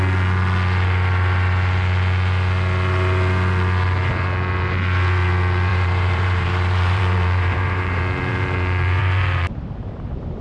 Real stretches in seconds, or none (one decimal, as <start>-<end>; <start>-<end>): 0.0-5.7; 8.0-9.0; 10.0-10.4